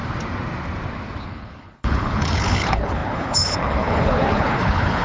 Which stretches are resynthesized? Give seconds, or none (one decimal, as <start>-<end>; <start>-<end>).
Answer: 1.2-5.0